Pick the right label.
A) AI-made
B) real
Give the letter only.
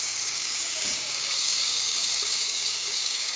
A